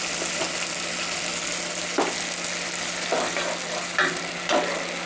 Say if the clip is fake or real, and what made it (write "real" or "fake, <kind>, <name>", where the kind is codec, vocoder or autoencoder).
real